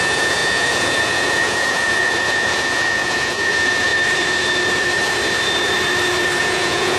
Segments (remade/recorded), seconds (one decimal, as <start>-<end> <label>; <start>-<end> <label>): 0.0-3.9 remade; 3.9-6.4 recorded; 6.4-7.0 remade